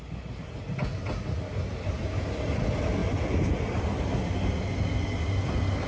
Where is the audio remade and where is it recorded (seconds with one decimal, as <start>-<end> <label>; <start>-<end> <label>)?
0.0-5.9 recorded